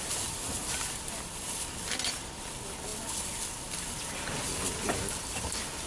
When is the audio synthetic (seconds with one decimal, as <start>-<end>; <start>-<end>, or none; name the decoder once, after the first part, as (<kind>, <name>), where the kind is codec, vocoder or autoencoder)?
none